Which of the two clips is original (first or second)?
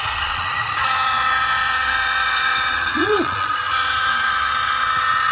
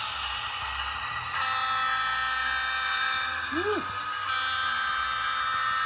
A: second